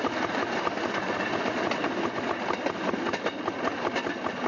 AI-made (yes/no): no